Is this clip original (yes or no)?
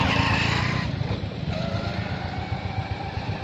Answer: yes